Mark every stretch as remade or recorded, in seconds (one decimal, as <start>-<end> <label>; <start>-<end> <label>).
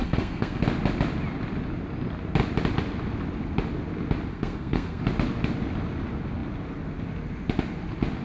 0.0-0.6 remade; 0.6-4.3 recorded; 4.3-5.0 remade; 5.0-8.2 recorded